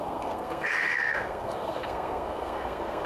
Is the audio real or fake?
fake